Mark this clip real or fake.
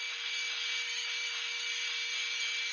real